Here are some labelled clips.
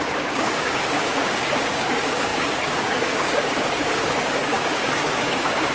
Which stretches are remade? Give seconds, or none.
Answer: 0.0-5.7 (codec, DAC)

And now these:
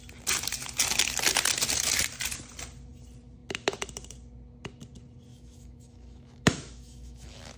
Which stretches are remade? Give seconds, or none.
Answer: 5.3-7.6 (autoencoder, DAC-VAE)